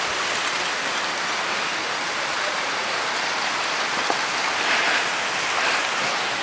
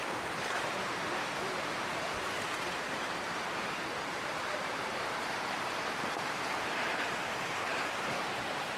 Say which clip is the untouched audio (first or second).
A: first